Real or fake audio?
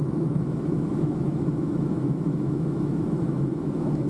fake